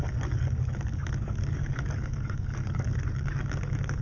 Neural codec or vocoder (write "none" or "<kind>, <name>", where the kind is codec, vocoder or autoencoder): codec, DAC